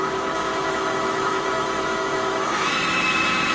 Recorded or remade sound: remade